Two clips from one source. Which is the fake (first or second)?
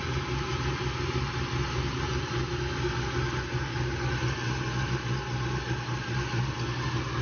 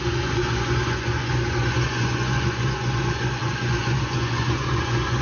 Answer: second